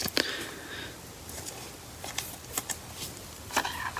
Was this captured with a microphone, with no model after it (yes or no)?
yes